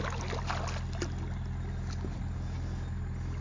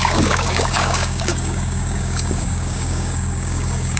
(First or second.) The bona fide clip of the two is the first